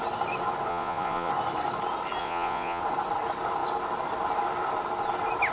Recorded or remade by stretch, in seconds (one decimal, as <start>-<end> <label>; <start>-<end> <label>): 0.0-0.7 recorded; 0.7-1.3 remade; 1.3-2.2 recorded; 2.2-2.8 remade; 2.8-5.5 recorded